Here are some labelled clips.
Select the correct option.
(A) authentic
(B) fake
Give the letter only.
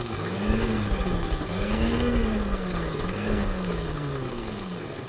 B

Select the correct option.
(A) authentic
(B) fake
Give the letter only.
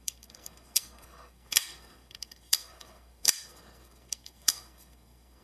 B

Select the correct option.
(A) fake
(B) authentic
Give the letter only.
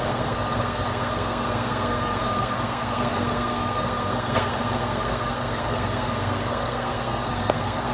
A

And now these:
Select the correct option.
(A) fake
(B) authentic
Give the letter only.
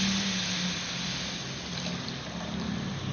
B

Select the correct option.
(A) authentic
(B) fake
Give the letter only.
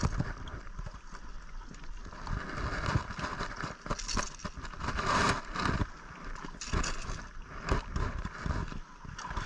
A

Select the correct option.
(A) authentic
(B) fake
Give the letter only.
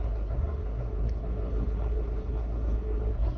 B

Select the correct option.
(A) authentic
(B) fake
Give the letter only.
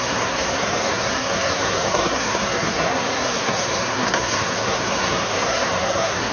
B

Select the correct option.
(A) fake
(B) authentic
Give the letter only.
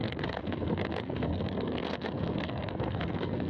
A